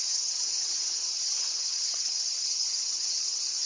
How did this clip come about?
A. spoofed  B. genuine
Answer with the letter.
A